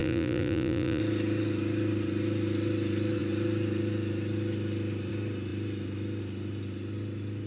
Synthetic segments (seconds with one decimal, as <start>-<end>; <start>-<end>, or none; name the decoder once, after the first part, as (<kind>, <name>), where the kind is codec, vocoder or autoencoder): 0.0-1.0 (vocoder, Vocos)